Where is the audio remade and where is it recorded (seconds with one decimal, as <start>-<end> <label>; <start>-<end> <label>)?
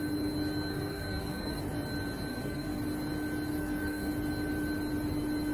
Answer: 0.0-0.7 recorded; 0.7-1.6 remade; 1.6-2.3 recorded; 2.3-2.8 remade; 2.8-3.5 recorded; 3.5-4.1 remade; 4.1-5.5 recorded